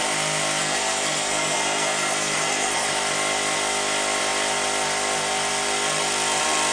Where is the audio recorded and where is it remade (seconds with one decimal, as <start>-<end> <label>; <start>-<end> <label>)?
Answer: 0.0-0.6 recorded; 0.6-2.9 remade; 2.9-6.7 recorded

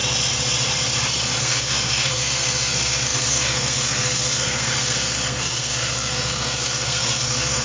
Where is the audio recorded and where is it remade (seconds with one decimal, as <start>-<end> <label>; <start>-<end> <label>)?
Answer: 0.0-1.4 recorded; 1.4-7.6 remade

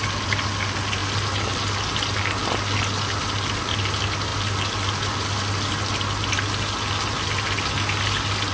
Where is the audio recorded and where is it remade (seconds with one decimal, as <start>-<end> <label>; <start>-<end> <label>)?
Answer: 0.0-8.5 recorded

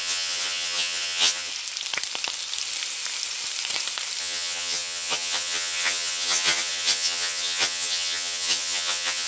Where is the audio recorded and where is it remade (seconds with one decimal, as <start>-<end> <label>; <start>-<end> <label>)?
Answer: 0.0-1.5 remade; 1.5-4.2 recorded; 4.2-9.3 remade

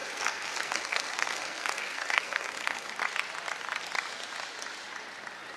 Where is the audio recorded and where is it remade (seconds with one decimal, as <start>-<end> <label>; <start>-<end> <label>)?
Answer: 0.0-2.9 remade; 2.9-5.6 recorded